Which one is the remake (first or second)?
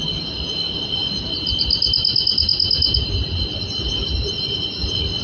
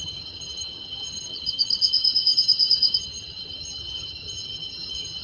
second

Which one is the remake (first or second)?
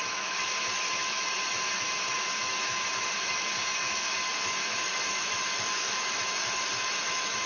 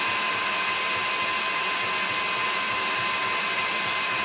first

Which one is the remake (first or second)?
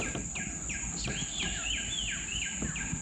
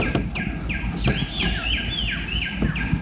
first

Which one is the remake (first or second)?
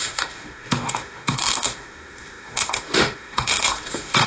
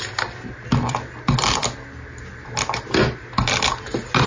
first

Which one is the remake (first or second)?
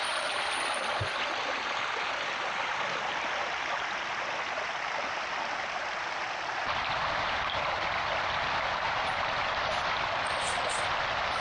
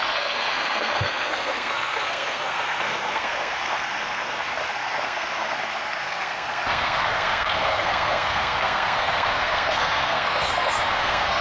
second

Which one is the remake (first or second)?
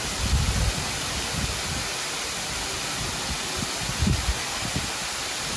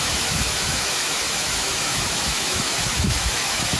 second